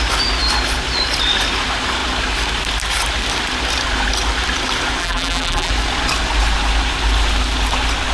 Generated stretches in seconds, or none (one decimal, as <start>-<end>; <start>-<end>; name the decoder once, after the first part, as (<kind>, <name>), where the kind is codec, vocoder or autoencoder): 5.0-5.7 (vocoder, BigVGAN v2)